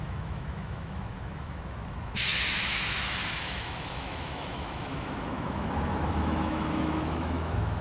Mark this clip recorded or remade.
remade